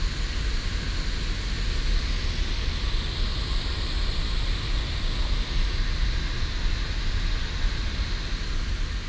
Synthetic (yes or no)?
no